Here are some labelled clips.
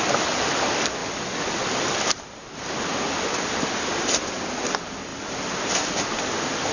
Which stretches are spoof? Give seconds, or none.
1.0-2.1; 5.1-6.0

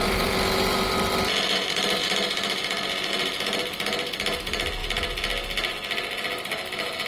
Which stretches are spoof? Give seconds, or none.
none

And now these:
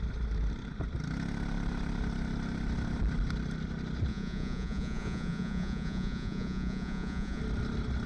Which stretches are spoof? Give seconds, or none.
4.1-7.4

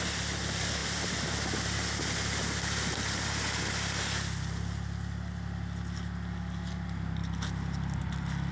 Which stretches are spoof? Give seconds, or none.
none

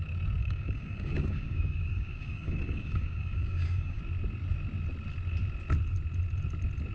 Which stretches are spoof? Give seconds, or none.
0.4-4.0